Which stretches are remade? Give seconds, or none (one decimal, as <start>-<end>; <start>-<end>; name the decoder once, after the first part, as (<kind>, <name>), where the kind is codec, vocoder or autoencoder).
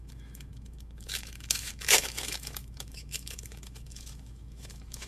0.0-5.1 (autoencoder, DAC-VAE)